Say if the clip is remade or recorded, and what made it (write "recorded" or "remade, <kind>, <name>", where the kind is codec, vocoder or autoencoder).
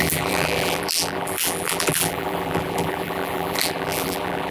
remade, vocoder, BigVGAN v2